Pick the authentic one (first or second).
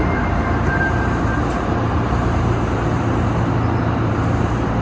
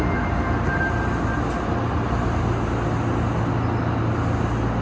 second